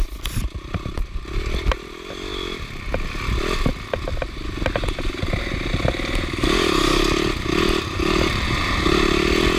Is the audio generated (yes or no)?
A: no